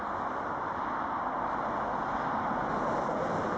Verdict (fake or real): real